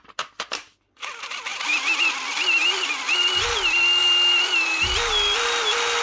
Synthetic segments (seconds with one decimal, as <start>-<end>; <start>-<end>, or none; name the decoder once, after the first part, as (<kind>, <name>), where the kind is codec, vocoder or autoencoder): 1.5-2.1 (vocoder, BigVGAN v2); 4.0-4.9